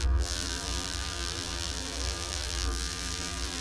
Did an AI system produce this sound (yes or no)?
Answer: yes